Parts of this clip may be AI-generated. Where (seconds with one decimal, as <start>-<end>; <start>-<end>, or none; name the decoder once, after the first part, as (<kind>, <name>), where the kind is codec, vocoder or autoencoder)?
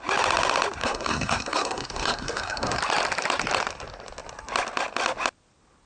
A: 0.8-2.8 (codec, SNAC)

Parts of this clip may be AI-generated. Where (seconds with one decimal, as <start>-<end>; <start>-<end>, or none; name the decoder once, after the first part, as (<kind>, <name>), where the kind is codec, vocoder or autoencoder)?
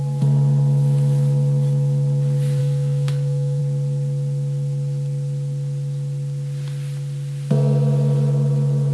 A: 2.6-3.6 (codec, SNAC)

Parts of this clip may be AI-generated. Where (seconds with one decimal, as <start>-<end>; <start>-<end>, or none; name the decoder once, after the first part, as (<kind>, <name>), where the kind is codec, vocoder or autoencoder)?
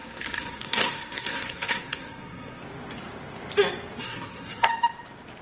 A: 0.0-2.6 (codec, SNAC); 4.0-4.7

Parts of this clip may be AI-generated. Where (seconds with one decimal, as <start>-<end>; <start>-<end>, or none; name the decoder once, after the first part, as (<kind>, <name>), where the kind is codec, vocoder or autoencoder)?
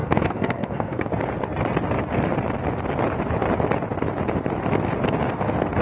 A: 0.0-1.1 (codec, SNAC)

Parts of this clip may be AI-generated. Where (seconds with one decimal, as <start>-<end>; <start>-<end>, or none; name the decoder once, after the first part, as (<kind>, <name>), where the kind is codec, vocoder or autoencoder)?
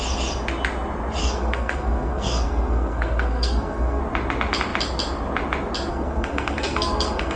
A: 1.2-4.0 (codec, SNAC); 5.9-7.4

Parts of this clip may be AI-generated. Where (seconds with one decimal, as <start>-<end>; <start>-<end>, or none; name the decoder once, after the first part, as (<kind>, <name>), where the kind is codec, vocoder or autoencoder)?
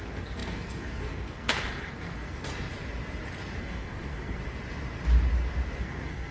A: 0.0-2.5 (codec, SNAC); 3.6-4.4; 5.8-6.3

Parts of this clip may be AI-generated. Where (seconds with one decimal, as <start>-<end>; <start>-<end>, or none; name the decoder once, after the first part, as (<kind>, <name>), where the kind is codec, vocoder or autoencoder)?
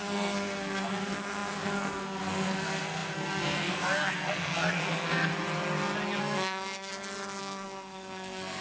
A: 0.0-5.3 (codec, SNAC); 6.2-6.9; 7.4-8.6